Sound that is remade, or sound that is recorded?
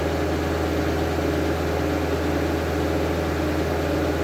recorded